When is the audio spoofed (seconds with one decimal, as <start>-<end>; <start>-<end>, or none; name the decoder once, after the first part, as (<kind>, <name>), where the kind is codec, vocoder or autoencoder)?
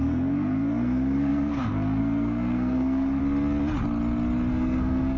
0.0-3.2 (codec, SNAC); 4.5-5.2